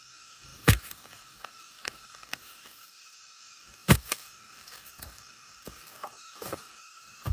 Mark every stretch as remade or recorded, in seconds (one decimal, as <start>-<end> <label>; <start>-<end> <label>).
0.0-7.3 remade